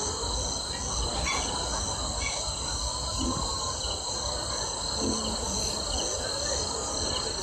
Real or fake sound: real